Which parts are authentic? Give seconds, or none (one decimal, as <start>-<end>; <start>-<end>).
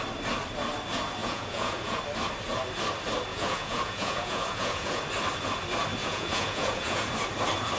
0.0-1.2; 2.0-3.3; 5.0-6.0; 7.1-7.8